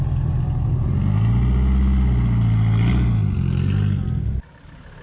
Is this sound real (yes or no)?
yes